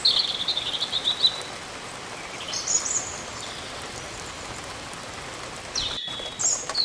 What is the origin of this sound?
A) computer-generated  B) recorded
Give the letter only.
B